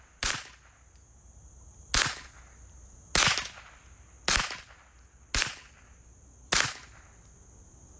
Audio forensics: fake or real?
real